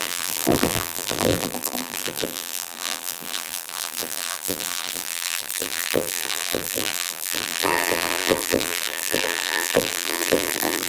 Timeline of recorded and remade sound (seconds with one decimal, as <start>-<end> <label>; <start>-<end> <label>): 0.0-10.9 remade